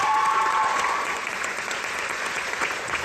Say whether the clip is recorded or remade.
remade